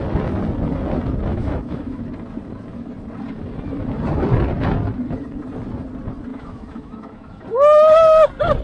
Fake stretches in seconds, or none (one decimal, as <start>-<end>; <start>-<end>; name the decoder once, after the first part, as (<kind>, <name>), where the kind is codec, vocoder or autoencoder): 1.3-2.0 (autoencoder, DAC-VAE); 6.3-7.4